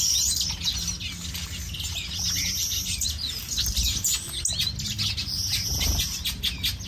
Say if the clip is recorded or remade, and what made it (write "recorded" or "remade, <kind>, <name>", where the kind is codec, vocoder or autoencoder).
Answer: recorded